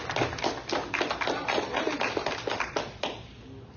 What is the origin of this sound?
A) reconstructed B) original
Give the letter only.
B